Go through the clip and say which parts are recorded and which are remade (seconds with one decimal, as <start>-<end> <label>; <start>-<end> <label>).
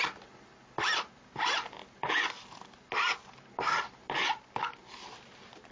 0.0-5.7 recorded